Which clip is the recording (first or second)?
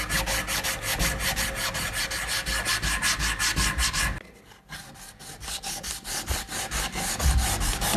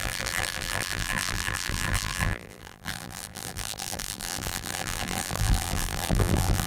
first